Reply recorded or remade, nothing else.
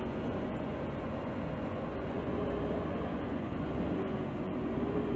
remade